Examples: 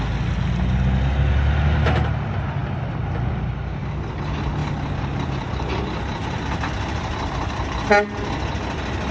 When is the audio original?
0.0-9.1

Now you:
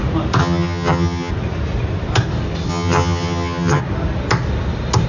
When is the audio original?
0.0-0.4; 1.3-2.7; 3.8-5.1

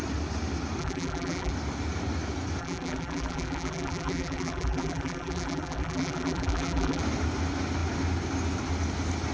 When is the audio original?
0.0-0.8; 1.5-2.6; 7.0-9.3

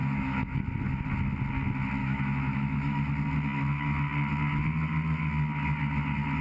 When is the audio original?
0.6-2.0; 3.1-6.4

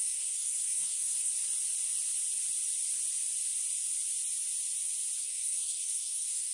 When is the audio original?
1.3-5.2

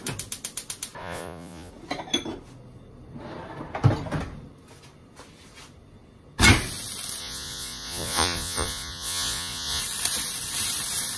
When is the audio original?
0.0-1.0; 1.7-7.2; 9.8-11.2

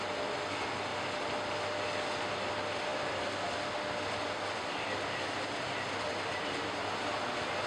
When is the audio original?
0.0-7.7

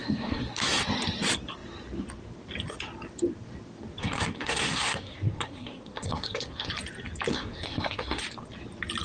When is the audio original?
0.8-4.0; 6.7-7.3; 8.2-9.0